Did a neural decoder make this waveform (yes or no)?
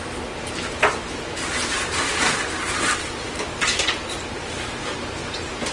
yes